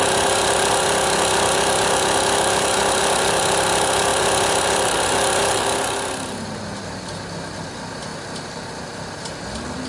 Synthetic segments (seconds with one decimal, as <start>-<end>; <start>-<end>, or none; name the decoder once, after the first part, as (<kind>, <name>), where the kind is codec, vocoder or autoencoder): none